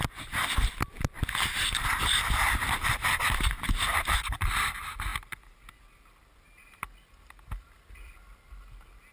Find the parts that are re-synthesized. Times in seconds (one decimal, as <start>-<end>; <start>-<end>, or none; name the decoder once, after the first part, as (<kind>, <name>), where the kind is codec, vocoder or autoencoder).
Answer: 0.0-5.1 (vocoder, BigVGAN v2); 5.8-9.1